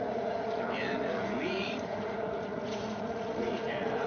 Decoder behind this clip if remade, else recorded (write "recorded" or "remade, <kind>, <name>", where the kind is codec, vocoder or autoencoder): remade, vocoder, Vocos